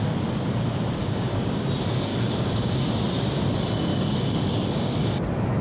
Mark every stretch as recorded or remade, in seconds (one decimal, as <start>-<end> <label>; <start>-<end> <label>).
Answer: 0.0-1.0 recorded; 1.0-1.6 remade; 1.6-2.1 recorded; 2.1-2.9 remade; 2.9-3.9 recorded; 3.9-5.1 remade; 5.1-5.6 recorded